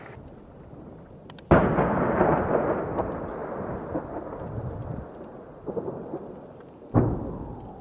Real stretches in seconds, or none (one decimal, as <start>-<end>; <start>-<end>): 0.0-7.8